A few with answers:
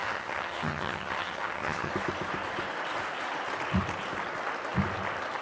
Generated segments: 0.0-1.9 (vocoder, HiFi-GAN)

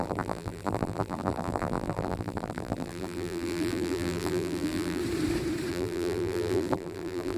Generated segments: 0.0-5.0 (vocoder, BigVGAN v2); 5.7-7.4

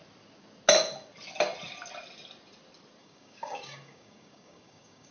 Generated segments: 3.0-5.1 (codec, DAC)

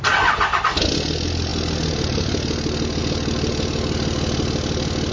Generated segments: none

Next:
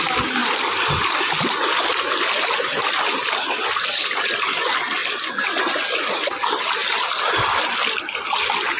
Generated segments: none